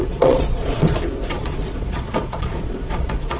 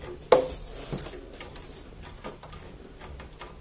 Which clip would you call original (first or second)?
second